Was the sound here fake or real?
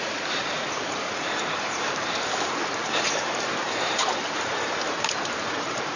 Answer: fake